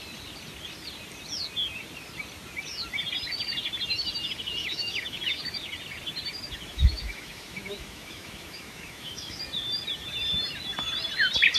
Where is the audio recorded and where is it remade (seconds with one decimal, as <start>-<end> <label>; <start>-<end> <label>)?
0.0-4.6 recorded; 4.6-5.4 remade; 5.4-6.7 recorded; 6.7-9.4 remade; 9.4-11.6 recorded